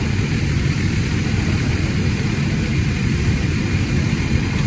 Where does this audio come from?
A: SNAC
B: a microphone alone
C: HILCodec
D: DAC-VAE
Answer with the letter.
B